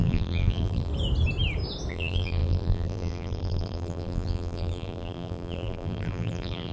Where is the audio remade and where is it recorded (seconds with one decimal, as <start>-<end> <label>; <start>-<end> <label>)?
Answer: 0.0-0.9 remade; 0.9-1.9 recorded; 1.9-6.7 remade